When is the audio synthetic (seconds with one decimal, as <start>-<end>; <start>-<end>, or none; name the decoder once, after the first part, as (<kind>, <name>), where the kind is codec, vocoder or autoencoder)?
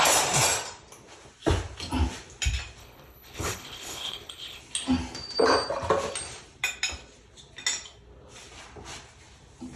2.8-4.6 (codec, HILCodec)